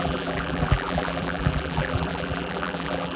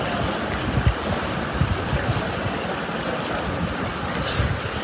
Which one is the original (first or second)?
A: second